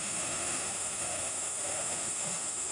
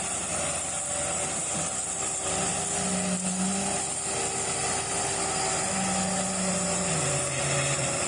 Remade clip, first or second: first